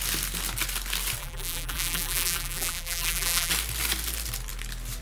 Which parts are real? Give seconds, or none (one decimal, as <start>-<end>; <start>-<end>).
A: 0.0-1.2; 3.5-5.0